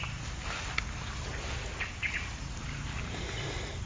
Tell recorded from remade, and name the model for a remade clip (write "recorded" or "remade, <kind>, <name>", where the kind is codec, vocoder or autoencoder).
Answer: recorded